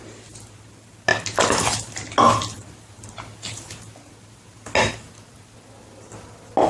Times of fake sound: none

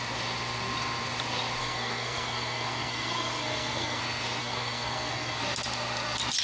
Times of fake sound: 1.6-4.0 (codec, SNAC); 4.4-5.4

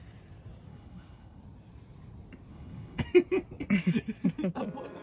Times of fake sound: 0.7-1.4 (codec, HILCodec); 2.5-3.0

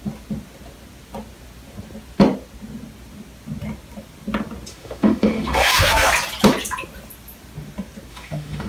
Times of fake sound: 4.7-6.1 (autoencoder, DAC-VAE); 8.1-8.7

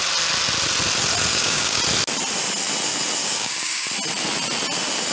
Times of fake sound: 1.3-1.8 (codec, DAC); 3.2-3.9